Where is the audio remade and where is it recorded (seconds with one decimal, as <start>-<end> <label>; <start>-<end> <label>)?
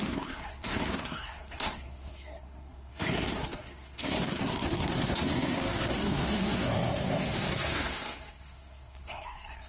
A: 0.0-9.7 remade